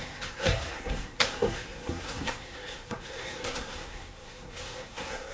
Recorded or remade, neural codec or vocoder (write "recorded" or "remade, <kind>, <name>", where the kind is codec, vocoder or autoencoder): remade, codec, SNAC